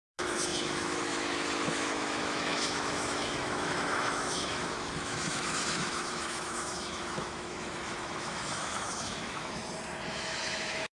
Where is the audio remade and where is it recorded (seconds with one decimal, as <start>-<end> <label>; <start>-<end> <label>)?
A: 0.0-9.6 remade; 9.6-10.1 recorded; 10.1-11.0 remade